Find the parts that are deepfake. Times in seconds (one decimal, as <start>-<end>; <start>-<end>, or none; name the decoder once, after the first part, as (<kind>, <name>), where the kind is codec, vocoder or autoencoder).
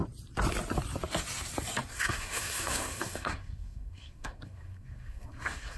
1.9-5.8 (codec, SNAC)